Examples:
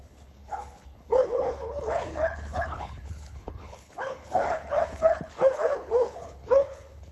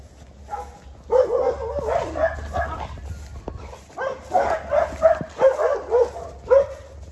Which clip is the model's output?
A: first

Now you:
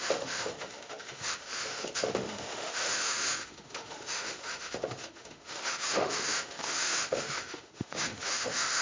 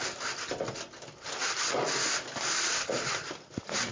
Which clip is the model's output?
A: first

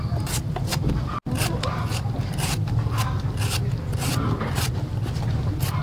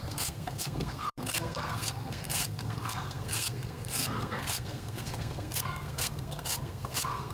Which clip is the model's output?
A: second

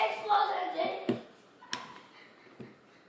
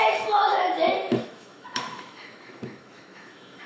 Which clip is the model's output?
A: second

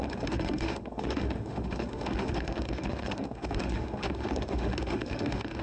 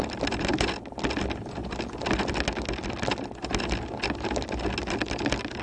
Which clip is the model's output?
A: first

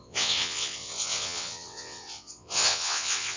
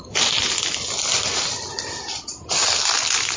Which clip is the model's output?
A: first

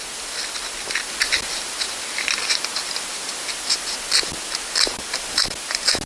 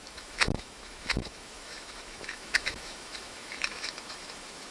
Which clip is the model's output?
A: second